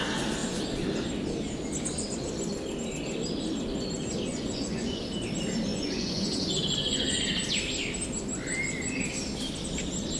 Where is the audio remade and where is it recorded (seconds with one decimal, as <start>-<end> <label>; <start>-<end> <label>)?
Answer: 0.0-4.3 recorded; 4.3-5.0 remade; 5.0-5.7 recorded; 5.7-7.2 remade; 7.2-10.2 recorded